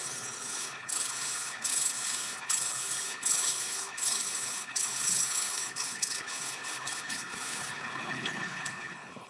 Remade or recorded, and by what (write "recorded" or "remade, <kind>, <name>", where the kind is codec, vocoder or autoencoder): remade, codec, HILCodec